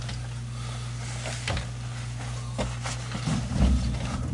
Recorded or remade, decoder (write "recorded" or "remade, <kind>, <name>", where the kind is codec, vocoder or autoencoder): recorded